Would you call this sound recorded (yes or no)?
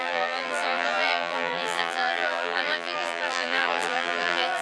no